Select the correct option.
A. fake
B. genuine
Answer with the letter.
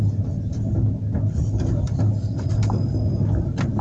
B